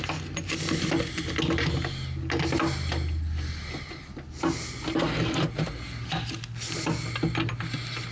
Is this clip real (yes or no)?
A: yes